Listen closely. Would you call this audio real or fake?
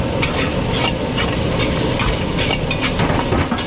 real